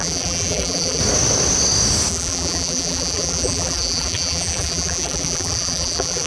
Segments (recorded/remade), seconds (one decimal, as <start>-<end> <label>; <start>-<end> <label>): 0.0-1.0 remade; 1.0-2.1 recorded; 2.1-6.3 remade